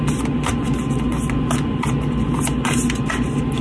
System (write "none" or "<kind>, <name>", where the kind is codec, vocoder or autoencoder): none